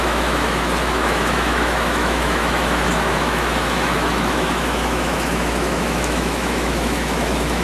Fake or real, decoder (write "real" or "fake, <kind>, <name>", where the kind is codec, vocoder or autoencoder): fake, autoencoder, DAC-VAE